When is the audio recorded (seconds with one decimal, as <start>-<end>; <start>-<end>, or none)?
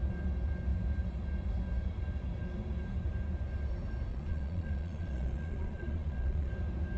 0.0-4.1; 6.5-7.0